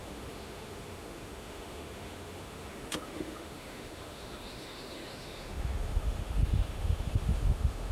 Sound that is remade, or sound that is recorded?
remade